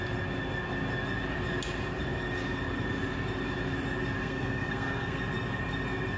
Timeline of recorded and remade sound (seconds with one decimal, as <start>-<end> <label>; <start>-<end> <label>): 0.0-4.2 recorded; 4.2-5.2 remade; 5.2-6.2 recorded